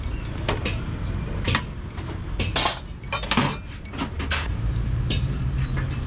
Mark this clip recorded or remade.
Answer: recorded